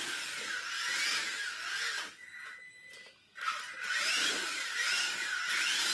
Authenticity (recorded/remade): recorded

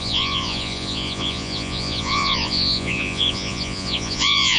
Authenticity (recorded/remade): remade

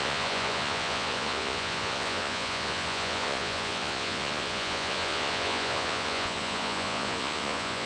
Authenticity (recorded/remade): remade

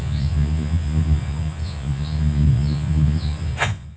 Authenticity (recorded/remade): remade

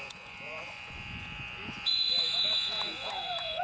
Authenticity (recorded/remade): remade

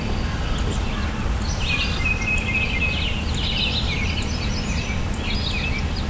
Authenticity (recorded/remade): recorded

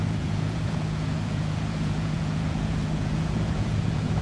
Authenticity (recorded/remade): remade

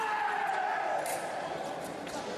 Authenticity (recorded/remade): recorded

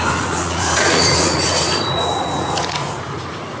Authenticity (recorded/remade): remade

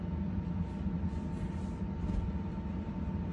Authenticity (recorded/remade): recorded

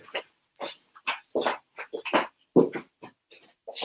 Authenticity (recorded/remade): recorded